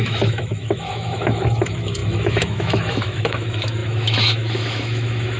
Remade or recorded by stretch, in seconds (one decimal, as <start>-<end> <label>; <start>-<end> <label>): 0.0-5.4 remade